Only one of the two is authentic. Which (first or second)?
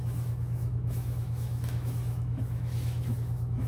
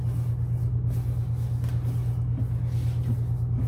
second